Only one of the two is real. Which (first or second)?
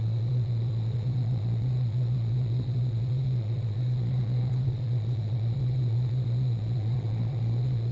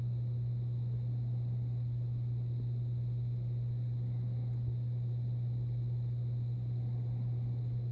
second